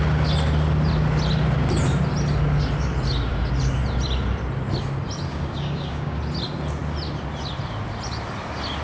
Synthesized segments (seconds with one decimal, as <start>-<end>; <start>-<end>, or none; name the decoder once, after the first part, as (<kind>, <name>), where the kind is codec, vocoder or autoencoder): 5.3-6.2 (codec, DAC)